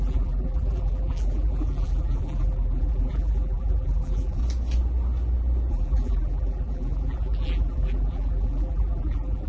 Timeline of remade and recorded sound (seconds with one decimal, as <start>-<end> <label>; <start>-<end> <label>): 0.0-4.4 remade; 4.4-5.7 recorded; 5.7-9.5 remade